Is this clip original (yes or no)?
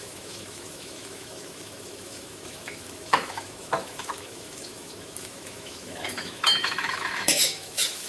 no